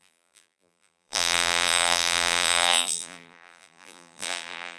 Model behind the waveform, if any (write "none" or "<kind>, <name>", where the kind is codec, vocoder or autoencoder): vocoder, BigVGAN v2